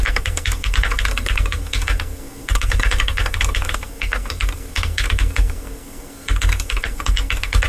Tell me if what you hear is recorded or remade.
remade